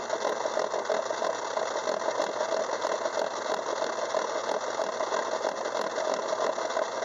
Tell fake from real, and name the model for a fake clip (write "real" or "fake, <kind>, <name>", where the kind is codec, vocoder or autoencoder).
real